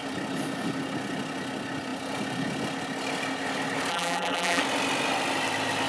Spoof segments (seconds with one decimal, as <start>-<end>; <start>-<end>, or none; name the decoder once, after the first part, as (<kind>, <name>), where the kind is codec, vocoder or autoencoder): 3.9-4.6 (vocoder, BigVGAN v2)